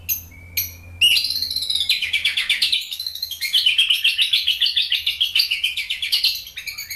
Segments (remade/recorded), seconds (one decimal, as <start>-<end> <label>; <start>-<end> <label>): 0.0-2.0 recorded; 2.0-6.2 remade; 6.2-7.0 recorded